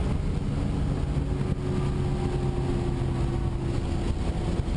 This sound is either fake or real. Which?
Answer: real